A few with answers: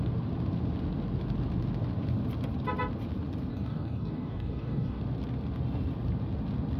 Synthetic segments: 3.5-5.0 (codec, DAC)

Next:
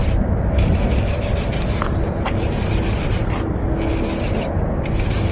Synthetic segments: none

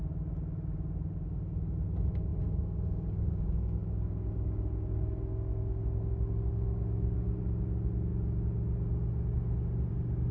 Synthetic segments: 2.3-7.4 (codec, DAC)

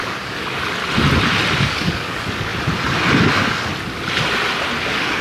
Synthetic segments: 0.0-0.8 (codec, DAC); 1.6-2.5; 3.2-3.7; 4.8-5.2

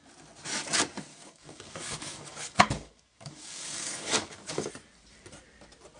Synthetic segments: 1.1-4.7 (codec, DAC)

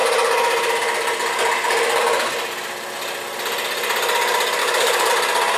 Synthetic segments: 4.6-5.1 (codec, DAC)